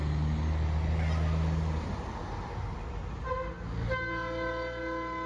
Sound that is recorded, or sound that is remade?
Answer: recorded